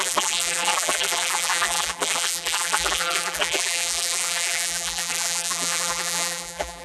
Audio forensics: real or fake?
fake